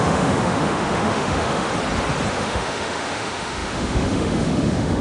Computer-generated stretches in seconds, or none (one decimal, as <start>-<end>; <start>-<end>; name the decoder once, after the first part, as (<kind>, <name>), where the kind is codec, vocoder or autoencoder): 0.0-1.7 (autoencoder, DAC-VAE); 2.3-5.0

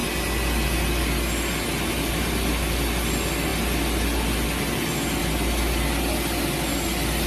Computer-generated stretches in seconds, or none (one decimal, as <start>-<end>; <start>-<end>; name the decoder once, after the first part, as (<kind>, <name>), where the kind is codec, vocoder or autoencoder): none

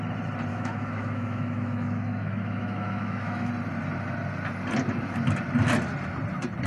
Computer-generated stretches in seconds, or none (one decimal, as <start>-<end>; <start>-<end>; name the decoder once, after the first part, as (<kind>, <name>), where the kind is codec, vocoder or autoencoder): 0.5-3.5 (autoencoder, DAC-VAE)